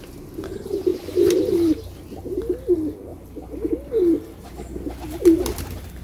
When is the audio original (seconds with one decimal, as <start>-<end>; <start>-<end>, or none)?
0.0-6.0

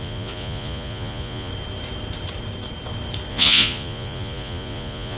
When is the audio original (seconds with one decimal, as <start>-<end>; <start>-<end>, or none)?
1.5-3.3

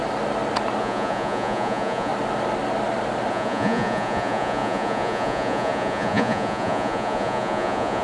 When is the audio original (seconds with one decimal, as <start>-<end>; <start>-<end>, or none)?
0.0-0.8; 2.1-3.3

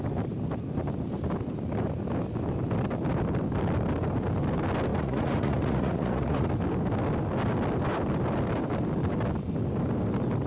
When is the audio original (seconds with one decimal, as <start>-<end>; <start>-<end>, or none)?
0.0-4.9; 6.5-10.5

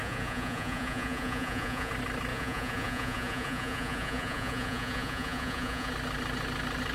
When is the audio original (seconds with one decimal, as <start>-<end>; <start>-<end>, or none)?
1.9-2.3; 5.9-6.9

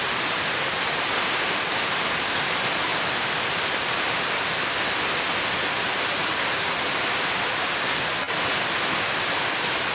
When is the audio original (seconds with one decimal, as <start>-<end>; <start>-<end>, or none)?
0.0-9.9

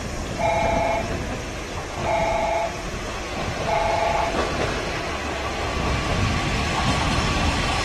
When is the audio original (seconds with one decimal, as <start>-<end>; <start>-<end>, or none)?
0.0-2.0; 3.1-7.8

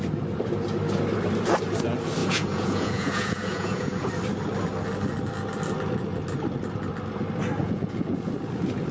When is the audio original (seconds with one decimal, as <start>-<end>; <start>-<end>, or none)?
0.0-2.2; 4.1-7.6; 8.3-8.9